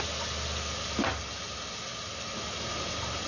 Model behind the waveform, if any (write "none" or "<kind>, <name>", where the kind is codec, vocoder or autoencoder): none